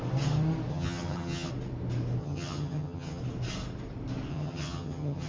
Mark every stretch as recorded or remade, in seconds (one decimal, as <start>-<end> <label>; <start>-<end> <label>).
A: 0.0-0.7 recorded; 0.7-1.5 remade; 1.5-2.2 recorded; 2.2-3.2 remade; 3.2-4.3 recorded; 4.3-5.3 remade